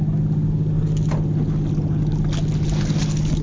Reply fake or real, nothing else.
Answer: real